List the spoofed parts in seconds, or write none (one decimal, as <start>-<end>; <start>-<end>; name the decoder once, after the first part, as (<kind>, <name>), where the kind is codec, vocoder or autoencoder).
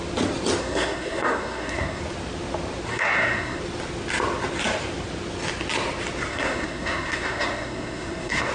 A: 0.6-2.0 (codec, SNAC); 2.9-3.6; 6.3-8.5